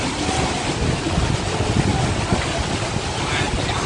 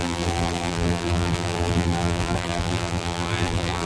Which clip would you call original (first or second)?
first